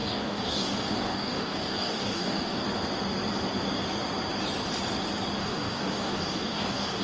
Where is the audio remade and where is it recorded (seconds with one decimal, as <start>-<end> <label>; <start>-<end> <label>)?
0.0-2.6 remade; 2.6-5.4 recorded; 5.4-7.0 remade

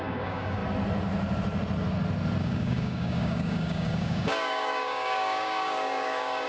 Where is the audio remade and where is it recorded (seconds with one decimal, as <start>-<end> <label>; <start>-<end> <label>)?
0.0-0.6 remade; 0.6-2.4 recorded; 2.4-6.5 remade

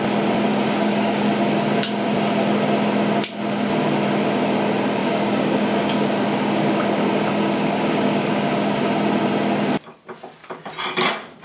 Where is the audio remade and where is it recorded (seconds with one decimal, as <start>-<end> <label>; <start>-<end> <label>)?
0.0-0.5 recorded; 0.5-1.2 remade; 1.2-5.0 recorded; 5.0-8.8 remade; 8.8-11.4 recorded